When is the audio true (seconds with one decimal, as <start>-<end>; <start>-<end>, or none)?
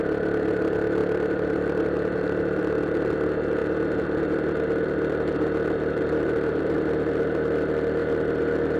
0.0-8.8